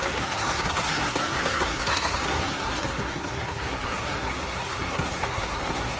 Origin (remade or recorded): remade